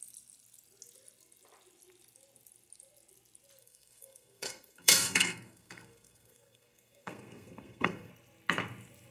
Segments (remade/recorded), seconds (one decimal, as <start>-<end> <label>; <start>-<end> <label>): 0.0-3.6 recorded; 3.6-8.1 remade; 8.1-9.1 recorded